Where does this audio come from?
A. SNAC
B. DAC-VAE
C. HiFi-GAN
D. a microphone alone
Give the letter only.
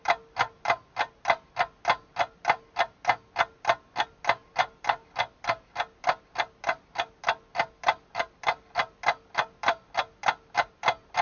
D